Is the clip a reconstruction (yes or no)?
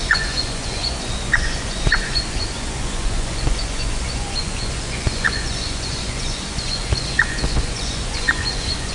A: yes